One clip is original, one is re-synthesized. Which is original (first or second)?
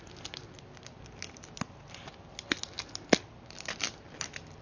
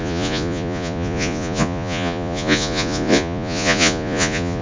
first